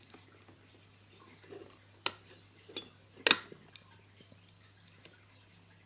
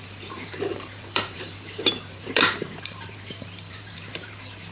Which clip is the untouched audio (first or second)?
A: first